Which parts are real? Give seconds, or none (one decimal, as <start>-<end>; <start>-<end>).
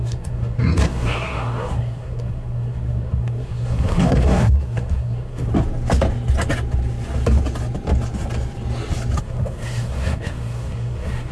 5.5-9.2